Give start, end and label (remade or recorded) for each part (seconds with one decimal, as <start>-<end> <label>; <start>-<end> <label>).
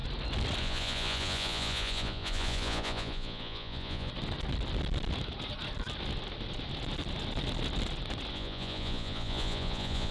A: 0.0-0.6 recorded; 0.6-4.1 remade; 4.1-8.3 recorded; 8.3-10.1 remade